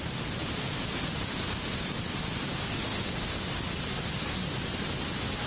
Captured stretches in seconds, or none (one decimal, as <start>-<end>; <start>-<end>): 0.0-0.4; 1.7-2.9; 4.3-5.5